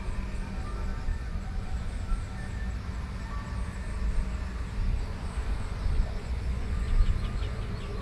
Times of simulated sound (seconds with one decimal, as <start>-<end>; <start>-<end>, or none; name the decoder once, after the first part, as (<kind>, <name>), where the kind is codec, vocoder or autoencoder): 1.1-2.1 (vocoder, Vocos); 5.1-8.0